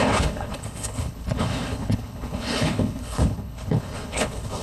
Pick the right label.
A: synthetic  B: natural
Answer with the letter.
A